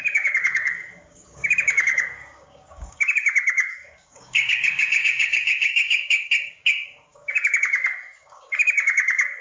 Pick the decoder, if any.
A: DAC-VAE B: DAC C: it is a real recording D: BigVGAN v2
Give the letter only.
B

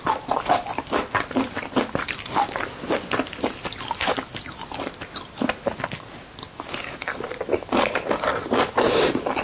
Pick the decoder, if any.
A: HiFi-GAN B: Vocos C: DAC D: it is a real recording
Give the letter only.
D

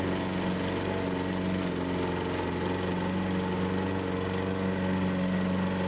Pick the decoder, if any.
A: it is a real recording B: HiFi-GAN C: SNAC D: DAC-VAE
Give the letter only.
A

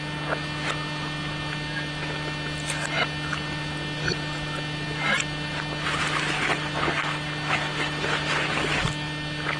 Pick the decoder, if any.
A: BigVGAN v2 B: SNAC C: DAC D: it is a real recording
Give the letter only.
D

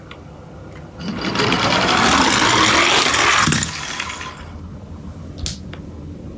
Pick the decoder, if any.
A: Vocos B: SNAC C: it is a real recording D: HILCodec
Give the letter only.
C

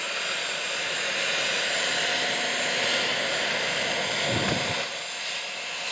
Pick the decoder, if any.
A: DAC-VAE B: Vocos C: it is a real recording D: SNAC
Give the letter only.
C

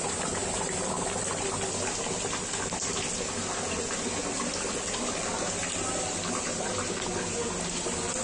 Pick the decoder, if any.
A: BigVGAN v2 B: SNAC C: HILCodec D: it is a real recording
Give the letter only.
D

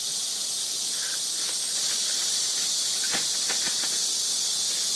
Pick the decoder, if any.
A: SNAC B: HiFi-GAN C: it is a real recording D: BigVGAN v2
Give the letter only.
C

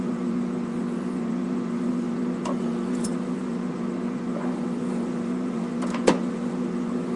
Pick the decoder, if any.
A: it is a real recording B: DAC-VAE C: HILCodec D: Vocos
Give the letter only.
D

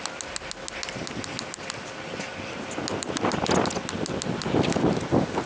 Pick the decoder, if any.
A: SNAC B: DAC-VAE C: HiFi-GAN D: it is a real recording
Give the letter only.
D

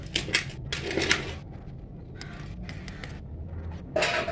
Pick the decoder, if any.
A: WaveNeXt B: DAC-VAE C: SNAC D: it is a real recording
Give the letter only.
D